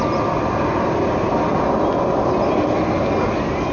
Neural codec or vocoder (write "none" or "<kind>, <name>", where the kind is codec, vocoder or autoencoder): none